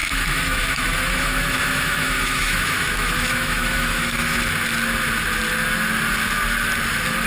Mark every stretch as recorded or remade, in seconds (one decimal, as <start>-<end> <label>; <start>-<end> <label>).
0.0-4.4 remade; 4.4-7.3 recorded